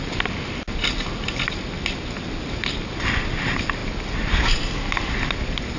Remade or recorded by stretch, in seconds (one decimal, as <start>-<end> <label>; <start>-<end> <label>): 0.0-5.8 recorded